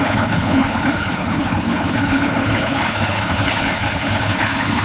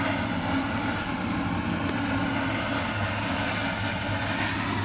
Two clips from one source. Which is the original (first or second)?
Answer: second